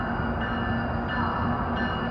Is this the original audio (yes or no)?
yes